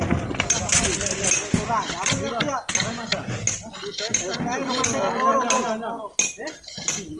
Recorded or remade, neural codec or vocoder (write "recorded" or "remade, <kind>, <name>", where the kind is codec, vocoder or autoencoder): recorded